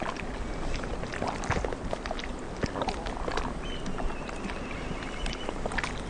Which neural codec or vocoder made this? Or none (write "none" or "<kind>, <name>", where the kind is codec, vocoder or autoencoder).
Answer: vocoder, BigVGAN v2